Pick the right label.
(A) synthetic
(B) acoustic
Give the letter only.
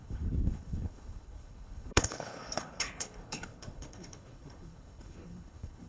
A